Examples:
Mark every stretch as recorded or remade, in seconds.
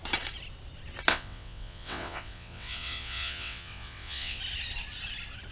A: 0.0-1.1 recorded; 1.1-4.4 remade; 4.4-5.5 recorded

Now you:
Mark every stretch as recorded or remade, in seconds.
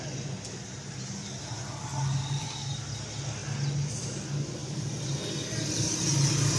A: 0.0-6.6 recorded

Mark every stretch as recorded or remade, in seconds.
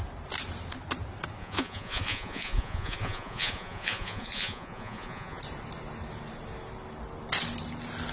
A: 0.0-1.4 recorded; 1.4-5.4 remade; 5.4-8.1 recorded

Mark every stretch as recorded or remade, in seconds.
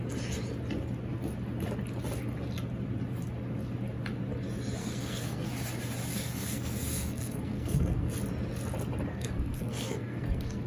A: 0.0-4.8 recorded; 4.8-5.5 remade; 5.5-6.1 recorded; 6.1-8.1 remade; 8.1-9.1 recorded; 9.1-10.7 remade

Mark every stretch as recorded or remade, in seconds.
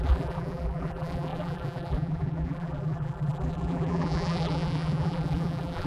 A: 0.0-5.9 remade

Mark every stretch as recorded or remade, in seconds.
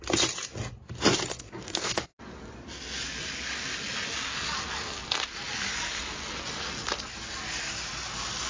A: 0.0-1.3 recorded; 1.3-2.2 remade; 2.2-8.5 recorded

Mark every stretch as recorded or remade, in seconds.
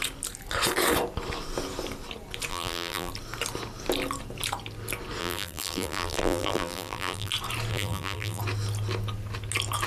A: 0.0-2.5 recorded; 2.5-3.1 remade; 3.1-5.2 recorded; 5.2-7.3 remade; 7.3-7.7 recorded; 7.7-8.4 remade; 8.4-9.9 recorded